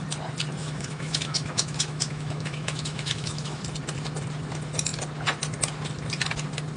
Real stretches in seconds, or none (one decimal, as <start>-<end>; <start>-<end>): 0.0-0.6; 3.6-6.8